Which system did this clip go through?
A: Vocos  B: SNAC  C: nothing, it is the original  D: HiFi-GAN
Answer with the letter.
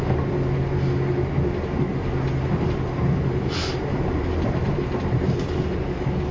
C